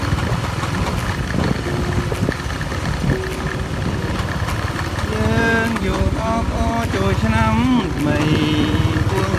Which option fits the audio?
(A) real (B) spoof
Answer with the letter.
A